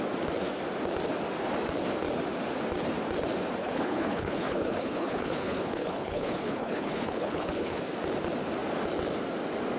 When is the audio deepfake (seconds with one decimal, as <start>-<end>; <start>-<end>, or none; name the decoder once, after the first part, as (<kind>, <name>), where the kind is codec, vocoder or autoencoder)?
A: 3.6-7.8 (codec, HILCodec)